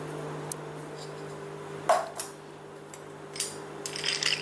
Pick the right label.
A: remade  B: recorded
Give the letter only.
B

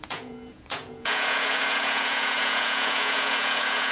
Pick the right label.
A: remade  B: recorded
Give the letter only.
A